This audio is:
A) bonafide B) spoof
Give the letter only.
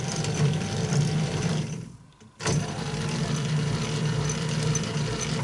B